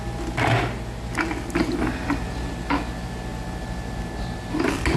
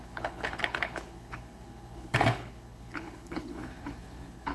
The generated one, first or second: second